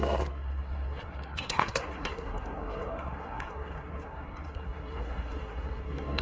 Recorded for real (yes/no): no